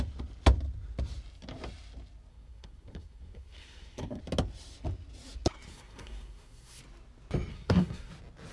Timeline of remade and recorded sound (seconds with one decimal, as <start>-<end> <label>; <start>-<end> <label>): 0.0-2.3 recorded; 2.3-4.2 remade; 4.2-5.7 recorded; 5.7-6.8 remade; 6.8-7.5 recorded; 7.5-8.1 remade; 8.1-8.5 recorded